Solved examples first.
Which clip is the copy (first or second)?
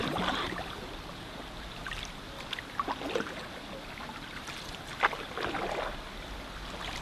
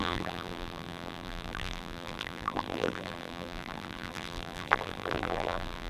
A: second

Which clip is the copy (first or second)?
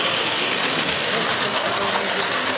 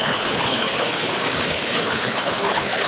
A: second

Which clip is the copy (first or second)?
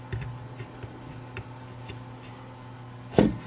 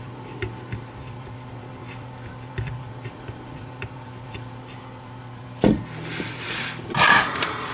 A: second